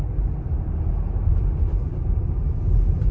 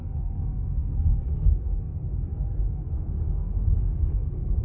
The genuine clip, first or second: first